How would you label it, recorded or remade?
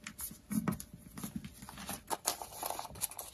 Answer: recorded